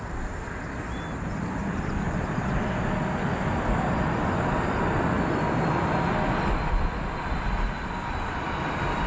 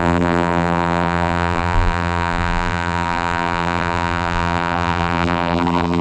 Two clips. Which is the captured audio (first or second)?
first